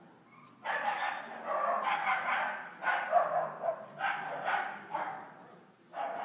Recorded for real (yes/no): yes